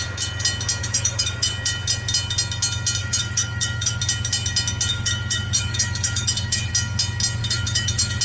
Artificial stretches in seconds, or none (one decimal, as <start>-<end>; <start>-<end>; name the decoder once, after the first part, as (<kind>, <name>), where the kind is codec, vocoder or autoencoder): 0.8-1.5 (autoencoder, DAC-VAE); 3.0-4.0; 4.9-6.7; 7.4-8.2

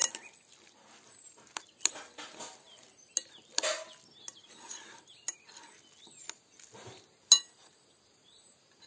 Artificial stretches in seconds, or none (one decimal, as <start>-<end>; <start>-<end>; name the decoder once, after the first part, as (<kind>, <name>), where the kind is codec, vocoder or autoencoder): none